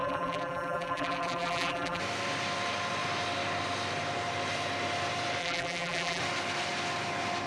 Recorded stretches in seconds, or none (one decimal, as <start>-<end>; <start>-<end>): 2.0-5.4; 6.2-7.5